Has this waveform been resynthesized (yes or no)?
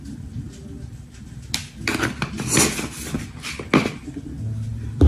no